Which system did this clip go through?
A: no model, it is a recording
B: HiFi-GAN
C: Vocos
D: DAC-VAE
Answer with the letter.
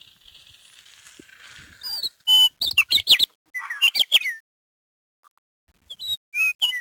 A